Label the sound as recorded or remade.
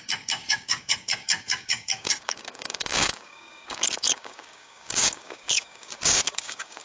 remade